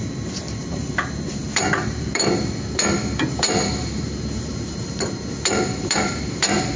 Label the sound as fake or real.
fake